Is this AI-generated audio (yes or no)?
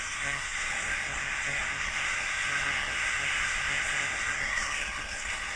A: yes